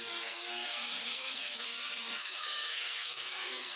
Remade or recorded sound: remade